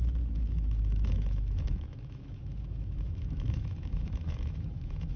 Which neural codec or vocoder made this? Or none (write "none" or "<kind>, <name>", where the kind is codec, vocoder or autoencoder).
autoencoder, DAC-VAE